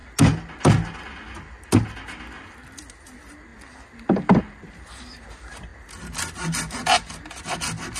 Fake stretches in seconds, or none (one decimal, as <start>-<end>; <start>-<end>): none